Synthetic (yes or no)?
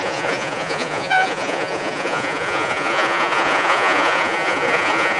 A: yes